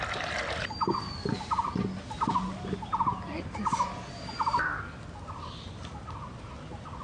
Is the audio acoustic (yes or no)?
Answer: yes